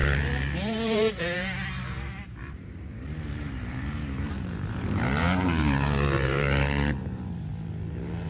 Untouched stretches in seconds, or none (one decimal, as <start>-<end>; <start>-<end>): 7.5-8.3